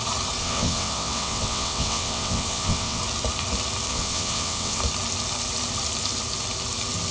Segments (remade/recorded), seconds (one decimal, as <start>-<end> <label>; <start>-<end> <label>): 0.0-0.4 recorded; 0.4-3.0 remade; 3.0-3.9 recorded; 3.9-4.8 remade; 4.8-7.1 recorded